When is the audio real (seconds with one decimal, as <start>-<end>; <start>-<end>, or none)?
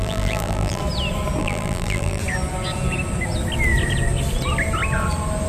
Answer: 0.8-1.4; 2.2-5.5